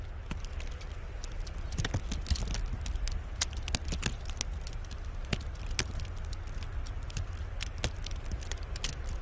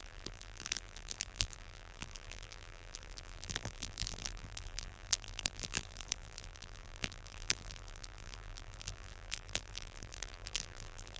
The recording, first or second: first